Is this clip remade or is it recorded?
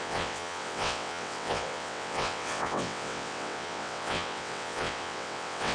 remade